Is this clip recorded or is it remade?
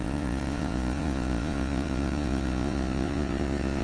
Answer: remade